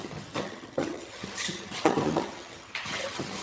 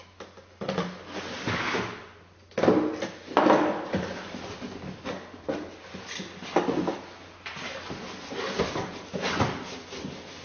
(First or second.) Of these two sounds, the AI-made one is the first